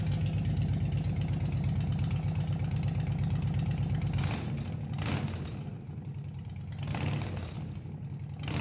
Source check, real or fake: real